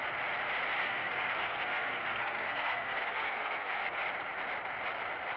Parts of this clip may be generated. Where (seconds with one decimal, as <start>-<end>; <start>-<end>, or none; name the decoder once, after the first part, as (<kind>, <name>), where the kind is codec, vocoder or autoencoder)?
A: 0.8-4.0 (codec, SNAC)